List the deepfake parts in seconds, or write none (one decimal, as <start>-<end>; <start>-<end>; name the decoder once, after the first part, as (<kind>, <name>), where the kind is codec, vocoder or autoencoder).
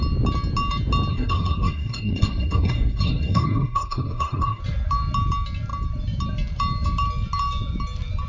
1.1-4.6 (codec, SNAC)